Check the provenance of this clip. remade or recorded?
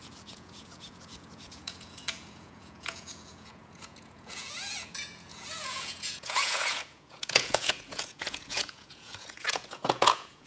remade